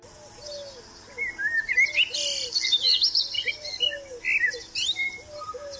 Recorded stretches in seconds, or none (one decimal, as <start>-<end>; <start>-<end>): 0.0-5.8